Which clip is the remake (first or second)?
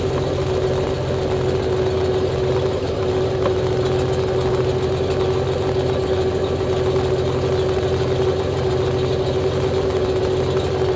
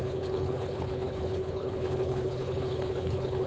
second